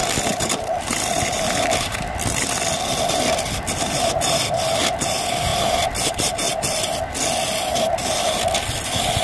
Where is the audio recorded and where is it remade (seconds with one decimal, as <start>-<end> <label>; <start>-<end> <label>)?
0.0-3.0 remade; 3.0-9.2 recorded